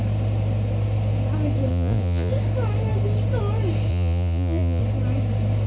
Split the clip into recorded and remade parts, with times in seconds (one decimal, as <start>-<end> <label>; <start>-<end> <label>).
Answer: 0.0-1.7 recorded; 1.7-2.3 remade; 2.3-3.9 recorded; 3.9-4.8 remade; 4.8-5.7 recorded